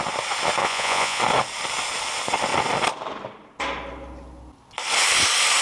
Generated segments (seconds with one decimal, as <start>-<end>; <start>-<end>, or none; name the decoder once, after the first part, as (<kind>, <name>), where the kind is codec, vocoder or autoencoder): 0.6-1.2 (vocoder, Vocos)